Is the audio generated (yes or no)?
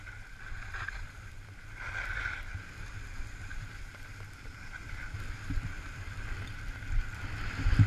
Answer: no